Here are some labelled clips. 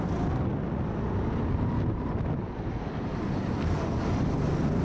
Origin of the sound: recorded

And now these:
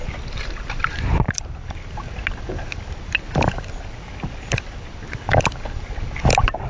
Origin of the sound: recorded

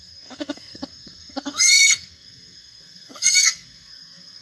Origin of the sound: remade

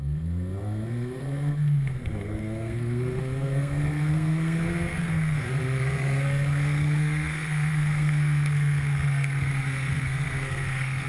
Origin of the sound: remade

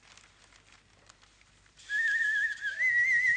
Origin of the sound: recorded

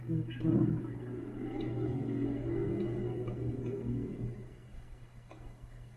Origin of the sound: remade